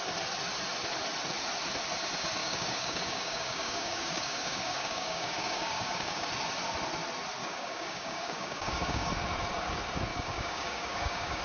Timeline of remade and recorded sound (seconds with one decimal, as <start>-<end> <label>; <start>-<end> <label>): 0.0-2.4 recorded; 2.4-6.3 remade; 6.3-7.4 recorded; 7.4-9.1 remade; 9.1-10.1 recorded; 10.1-11.4 remade